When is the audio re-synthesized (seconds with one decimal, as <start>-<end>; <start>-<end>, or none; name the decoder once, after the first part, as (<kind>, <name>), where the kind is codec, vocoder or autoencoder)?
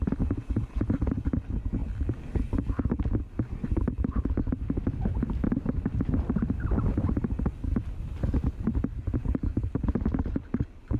none